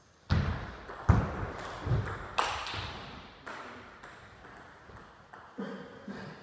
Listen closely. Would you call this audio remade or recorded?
recorded